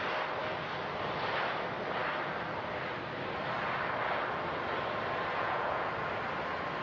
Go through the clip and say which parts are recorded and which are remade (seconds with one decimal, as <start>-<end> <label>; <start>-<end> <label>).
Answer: 0.0-5.3 recorded; 5.3-5.9 remade; 5.9-6.8 recorded